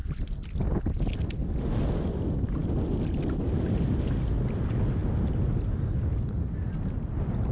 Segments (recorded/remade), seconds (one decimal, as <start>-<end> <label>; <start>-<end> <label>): 0.0-1.4 recorded; 1.4-2.1 remade; 2.1-7.5 recorded